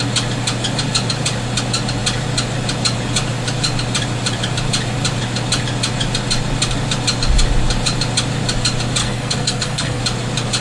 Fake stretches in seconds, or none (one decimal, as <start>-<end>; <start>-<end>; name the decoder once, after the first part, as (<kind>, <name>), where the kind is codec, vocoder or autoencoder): 9.0-10.0 (codec, SNAC)